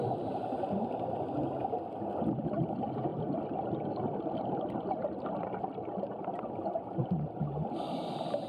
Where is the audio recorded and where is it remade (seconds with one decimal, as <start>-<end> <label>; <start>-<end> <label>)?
0.0-8.5 recorded

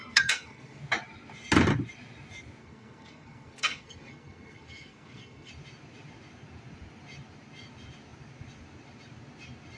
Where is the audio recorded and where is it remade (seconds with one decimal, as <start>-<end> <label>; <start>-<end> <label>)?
0.0-0.8 remade; 0.8-2.6 recorded; 2.6-5.5 remade; 5.5-9.8 recorded